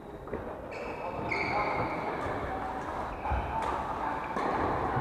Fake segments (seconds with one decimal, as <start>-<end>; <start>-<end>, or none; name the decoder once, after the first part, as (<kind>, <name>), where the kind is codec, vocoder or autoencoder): none